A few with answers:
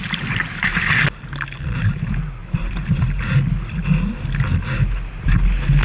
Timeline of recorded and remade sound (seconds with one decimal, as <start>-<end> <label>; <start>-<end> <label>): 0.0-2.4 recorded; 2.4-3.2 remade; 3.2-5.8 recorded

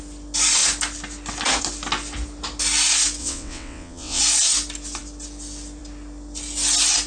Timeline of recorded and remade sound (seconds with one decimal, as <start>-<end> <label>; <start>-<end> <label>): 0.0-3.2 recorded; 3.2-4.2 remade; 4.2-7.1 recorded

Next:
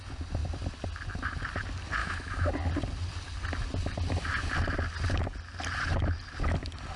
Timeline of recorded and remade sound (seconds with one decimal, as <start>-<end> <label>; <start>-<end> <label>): 0.0-2.0 recorded; 2.0-2.5 remade; 2.5-7.0 recorded

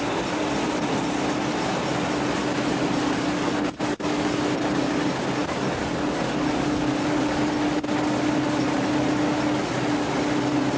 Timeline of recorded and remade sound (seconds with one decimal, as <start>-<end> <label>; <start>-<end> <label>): 0.0-10.8 recorded